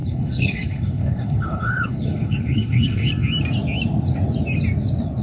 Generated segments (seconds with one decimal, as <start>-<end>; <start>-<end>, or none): 0.0-3.1